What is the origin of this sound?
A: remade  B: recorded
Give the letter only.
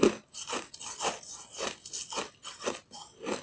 B